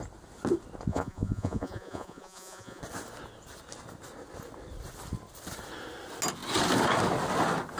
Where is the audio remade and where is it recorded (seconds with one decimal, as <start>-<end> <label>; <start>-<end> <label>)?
0.0-0.9 recorded; 0.9-2.8 remade; 2.8-7.8 recorded